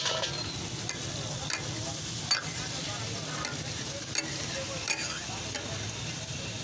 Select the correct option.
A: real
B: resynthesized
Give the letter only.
A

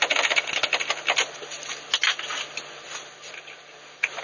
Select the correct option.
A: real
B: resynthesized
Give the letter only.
A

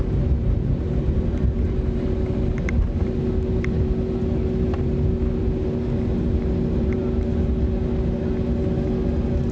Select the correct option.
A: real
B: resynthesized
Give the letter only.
A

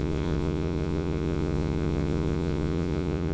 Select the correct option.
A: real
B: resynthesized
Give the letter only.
B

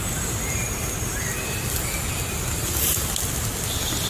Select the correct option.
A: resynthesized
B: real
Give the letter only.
B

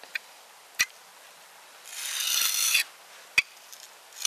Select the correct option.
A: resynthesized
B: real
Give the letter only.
B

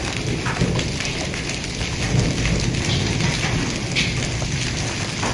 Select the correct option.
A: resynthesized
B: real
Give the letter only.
B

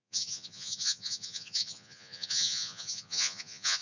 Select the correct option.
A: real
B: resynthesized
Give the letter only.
B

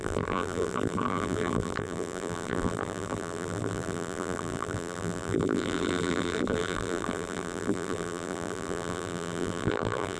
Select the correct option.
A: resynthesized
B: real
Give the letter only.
A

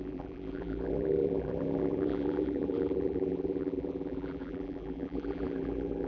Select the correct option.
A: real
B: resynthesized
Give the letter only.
B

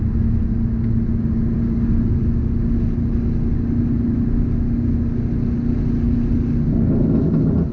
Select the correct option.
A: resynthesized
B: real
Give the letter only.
B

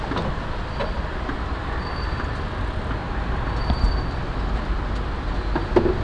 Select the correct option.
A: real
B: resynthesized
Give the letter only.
A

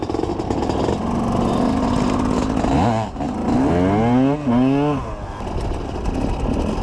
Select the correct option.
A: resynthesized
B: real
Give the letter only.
B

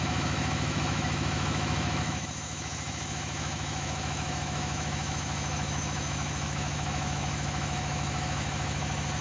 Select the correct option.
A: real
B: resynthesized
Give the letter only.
B